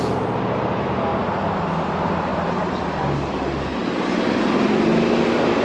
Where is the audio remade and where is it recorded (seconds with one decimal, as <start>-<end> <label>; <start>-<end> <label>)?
0.0-1.1 remade; 1.1-1.8 recorded; 1.8-3.7 remade; 3.7-5.6 recorded